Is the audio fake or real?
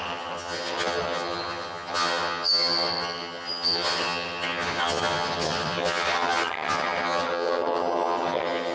fake